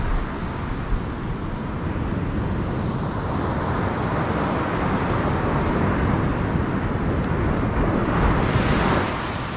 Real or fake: real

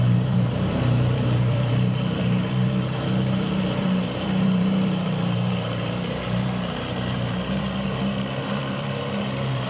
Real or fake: fake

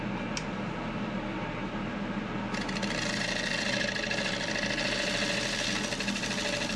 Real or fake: real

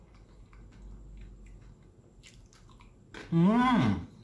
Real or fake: real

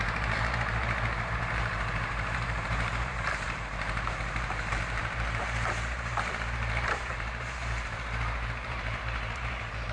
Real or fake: fake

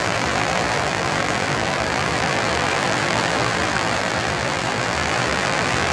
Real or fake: fake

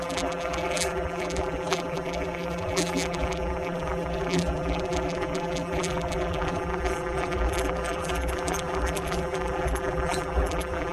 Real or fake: fake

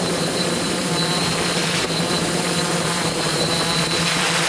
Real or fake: fake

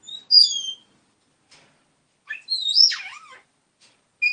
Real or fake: real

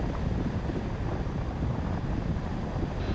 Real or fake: real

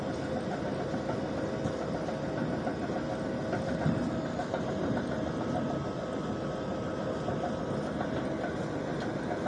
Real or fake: real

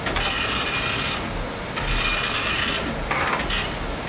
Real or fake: real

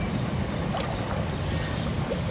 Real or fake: real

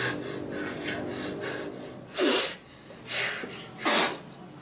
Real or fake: real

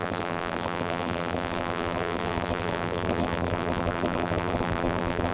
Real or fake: fake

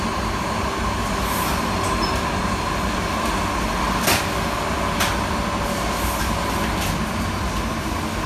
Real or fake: real